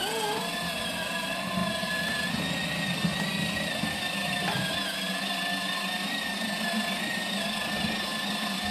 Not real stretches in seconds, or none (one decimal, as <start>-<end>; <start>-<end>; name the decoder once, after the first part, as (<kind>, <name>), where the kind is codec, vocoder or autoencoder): none

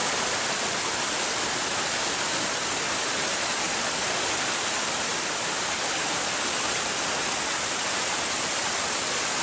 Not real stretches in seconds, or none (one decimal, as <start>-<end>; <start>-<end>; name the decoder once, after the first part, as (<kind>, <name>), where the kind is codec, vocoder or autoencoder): none

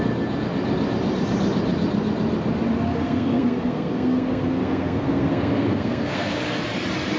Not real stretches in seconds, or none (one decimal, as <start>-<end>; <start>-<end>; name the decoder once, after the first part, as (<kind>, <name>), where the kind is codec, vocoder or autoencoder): 2.9-6.4 (codec, SNAC)

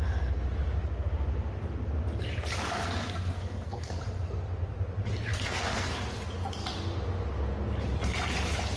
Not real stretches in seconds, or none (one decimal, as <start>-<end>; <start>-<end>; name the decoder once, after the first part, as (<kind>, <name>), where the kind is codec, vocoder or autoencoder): 2.8-4.0 (codec, SNAC); 5.3-5.9

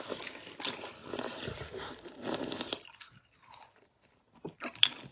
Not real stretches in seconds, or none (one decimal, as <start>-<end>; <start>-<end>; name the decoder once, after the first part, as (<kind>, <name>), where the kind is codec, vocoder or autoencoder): none

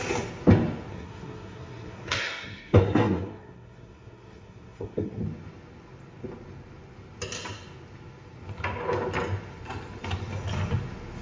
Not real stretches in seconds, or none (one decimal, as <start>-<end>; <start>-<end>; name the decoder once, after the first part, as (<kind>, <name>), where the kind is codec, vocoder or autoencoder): 0.9-5.2 (codec, SNAC)

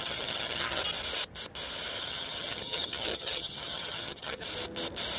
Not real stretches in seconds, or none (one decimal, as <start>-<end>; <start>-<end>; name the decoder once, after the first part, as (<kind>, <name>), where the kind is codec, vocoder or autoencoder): 0.0-0.8 (vocoder, HiFi-GAN); 2.0-4.4